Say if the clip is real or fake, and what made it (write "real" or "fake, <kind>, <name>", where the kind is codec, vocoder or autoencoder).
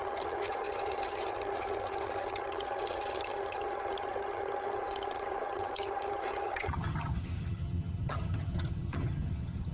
fake, vocoder, HiFi-GAN